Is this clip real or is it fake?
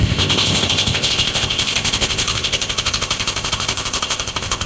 fake